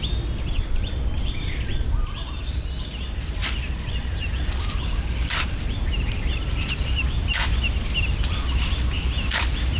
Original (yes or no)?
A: no